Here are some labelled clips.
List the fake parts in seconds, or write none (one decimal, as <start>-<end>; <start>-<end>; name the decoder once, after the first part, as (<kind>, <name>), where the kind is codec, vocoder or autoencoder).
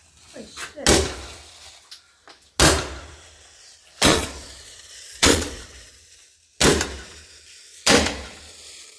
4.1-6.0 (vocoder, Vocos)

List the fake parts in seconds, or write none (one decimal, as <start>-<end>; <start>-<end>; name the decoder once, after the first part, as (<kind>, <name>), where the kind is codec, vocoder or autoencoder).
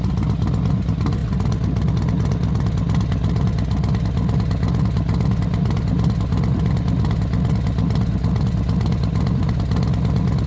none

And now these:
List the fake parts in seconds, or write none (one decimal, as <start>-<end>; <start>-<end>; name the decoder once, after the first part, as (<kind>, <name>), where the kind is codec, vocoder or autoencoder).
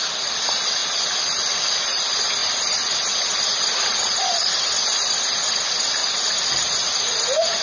2.4-5.2 (vocoder, BigVGAN v2); 6.0-7.0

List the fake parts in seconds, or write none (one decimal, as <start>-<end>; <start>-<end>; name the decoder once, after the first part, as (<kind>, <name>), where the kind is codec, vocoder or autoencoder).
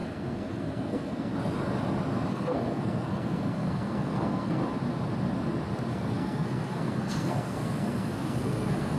0.0-1.3 (codec, SNAC); 2.3-4.6; 5.9-9.0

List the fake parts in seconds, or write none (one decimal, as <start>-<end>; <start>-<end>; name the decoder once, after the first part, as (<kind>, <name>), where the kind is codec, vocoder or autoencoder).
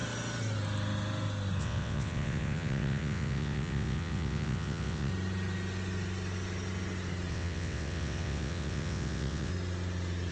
1.6-5.1 (vocoder, WaveNeXt); 7.3-9.5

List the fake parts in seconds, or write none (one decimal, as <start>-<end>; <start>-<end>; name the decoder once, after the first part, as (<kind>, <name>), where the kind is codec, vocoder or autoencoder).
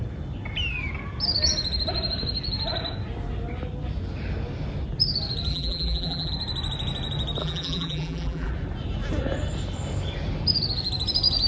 5.5-6.3 (vocoder, BigVGAN v2); 7.4-8.5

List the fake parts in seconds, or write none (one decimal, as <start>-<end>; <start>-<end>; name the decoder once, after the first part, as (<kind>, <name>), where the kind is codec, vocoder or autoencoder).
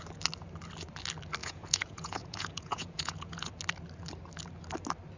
1.4-3.5 (vocoder, Vocos)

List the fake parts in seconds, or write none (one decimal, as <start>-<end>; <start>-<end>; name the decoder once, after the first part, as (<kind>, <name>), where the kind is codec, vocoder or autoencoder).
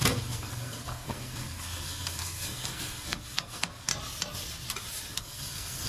0.0-3.9 (codec, SNAC); 5.1-5.9